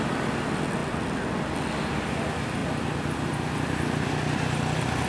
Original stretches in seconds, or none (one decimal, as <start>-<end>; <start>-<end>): 0.0-5.1